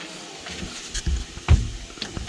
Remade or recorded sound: recorded